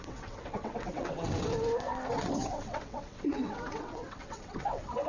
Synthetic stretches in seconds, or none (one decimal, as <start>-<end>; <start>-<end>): 0.0-1.5; 2.1-5.1